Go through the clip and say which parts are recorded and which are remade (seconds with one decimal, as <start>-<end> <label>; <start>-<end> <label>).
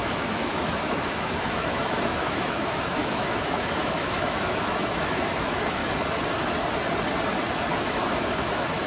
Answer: 0.0-5.8 remade; 5.8-7.8 recorded; 7.8-8.9 remade